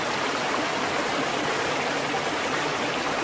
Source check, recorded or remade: recorded